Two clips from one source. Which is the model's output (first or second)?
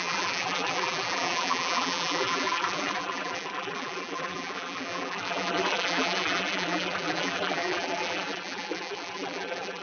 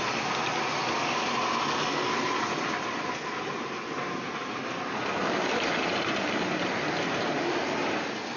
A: first